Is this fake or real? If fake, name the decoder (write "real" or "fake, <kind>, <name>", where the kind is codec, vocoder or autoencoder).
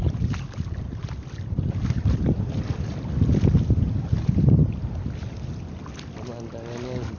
real